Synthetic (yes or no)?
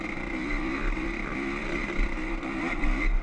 yes